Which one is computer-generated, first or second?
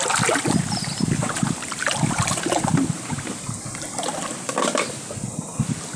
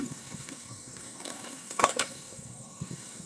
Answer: second